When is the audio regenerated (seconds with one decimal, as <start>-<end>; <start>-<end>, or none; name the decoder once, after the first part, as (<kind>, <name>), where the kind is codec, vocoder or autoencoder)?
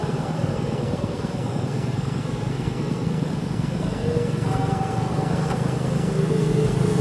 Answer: 0.0-7.0 (codec, SNAC)